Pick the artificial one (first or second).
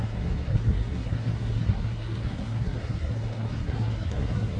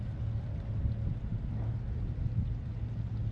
first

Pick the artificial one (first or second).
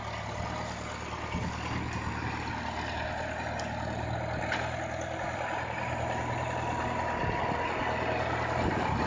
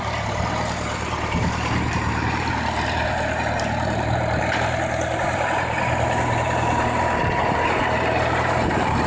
second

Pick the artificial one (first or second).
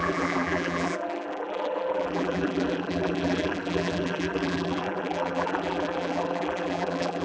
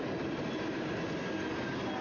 first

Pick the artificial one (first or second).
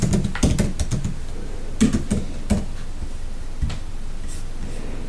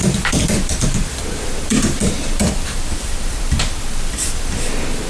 second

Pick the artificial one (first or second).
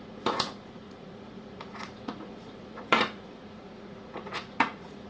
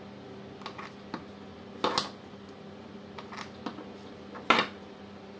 first